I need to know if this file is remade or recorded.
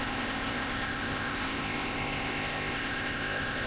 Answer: remade